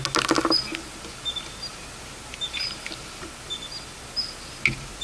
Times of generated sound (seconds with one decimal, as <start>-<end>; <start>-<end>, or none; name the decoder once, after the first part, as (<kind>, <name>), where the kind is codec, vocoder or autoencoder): none